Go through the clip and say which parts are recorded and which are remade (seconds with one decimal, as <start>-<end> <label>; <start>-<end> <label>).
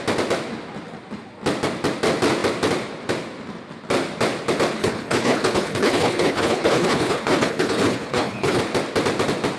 0.0-4.8 recorded; 4.8-8.6 remade; 8.6-9.6 recorded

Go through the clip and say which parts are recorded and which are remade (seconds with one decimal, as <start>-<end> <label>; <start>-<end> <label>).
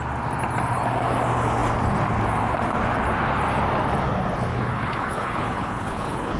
0.0-4.5 recorded; 4.5-6.4 remade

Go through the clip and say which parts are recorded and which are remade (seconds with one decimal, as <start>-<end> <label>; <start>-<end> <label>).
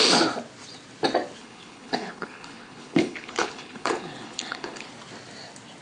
0.0-1.4 recorded; 1.4-4.9 remade; 4.9-5.8 recorded